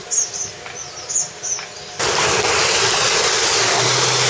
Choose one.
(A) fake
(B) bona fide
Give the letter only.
B